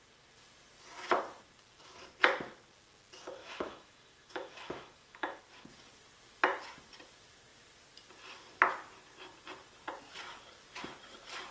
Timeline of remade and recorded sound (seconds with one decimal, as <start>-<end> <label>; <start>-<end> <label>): 0.0-3.4 recorded; 3.4-5.4 remade; 5.4-11.5 recorded